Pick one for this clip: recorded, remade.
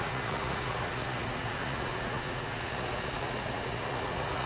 remade